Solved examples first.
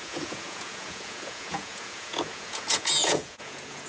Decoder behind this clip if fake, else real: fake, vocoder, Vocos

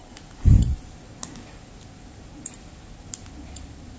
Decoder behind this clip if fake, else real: real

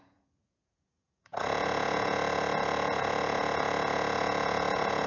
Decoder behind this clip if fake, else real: fake, vocoder, Vocos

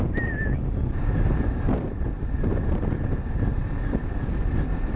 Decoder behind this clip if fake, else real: real